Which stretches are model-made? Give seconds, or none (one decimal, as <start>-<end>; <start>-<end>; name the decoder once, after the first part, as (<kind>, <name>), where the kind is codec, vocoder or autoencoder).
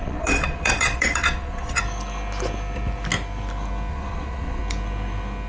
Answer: 0.0-1.8 (vocoder, Vocos); 3.9-4.6